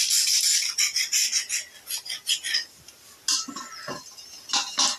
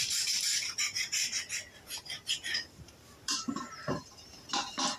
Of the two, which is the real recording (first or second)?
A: first